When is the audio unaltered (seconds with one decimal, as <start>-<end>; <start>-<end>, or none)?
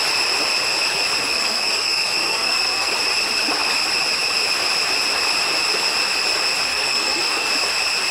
0.0-1.3; 2.9-6.7; 7.5-8.1